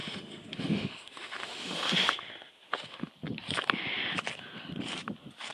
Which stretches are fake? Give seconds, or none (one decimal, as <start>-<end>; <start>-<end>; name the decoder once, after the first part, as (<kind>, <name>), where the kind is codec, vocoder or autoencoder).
0.0-3.1 (autoencoder, DAC-VAE)